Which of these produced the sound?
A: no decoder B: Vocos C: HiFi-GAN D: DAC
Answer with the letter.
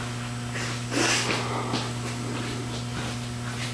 A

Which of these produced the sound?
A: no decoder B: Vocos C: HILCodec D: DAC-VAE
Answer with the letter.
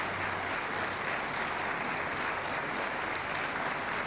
A